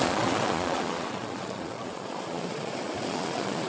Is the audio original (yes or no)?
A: no